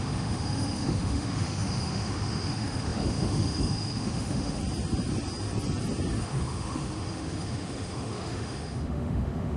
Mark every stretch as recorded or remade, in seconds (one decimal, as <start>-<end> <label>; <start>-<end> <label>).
0.0-4.6 remade; 4.6-6.2 recorded; 6.2-9.6 remade